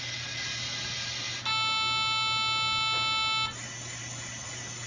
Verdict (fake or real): real